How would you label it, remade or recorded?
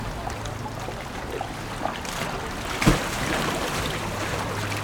recorded